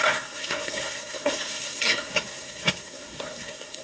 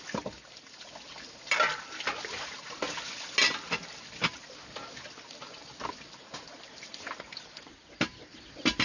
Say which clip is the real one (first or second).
second